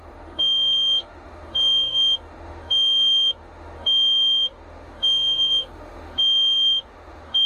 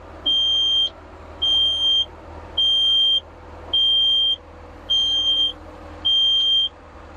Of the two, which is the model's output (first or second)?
first